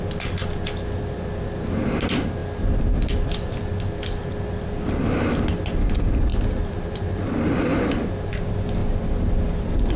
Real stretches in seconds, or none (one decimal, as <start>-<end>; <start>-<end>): 0.0-6.3; 7.2-7.7; 8.3-8.8; 9.3-10.0